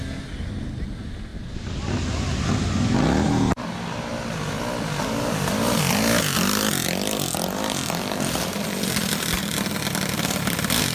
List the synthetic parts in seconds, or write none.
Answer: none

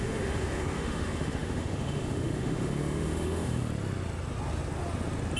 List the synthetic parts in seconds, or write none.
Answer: 0.0-3.6 (autoencoder, DAC-VAE)